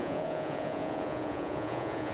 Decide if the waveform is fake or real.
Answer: fake